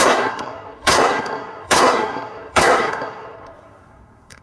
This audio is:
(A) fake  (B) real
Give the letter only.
A